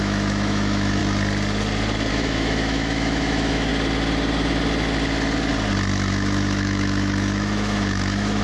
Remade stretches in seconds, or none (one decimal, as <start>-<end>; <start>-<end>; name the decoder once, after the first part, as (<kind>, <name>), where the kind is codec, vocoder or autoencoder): 0.0-1.0 (autoencoder, DAC-VAE); 2.1-3.7; 6.1-8.4